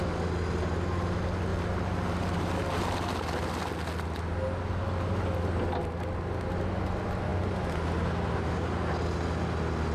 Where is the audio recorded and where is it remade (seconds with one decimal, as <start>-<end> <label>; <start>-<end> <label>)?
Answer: 0.0-1.5 recorded; 1.5-2.8 remade; 2.8-9.9 recorded